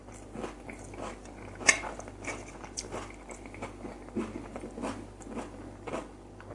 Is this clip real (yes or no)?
no